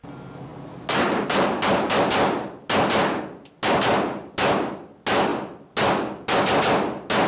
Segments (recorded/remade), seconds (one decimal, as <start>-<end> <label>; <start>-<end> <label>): 0.0-7.3 recorded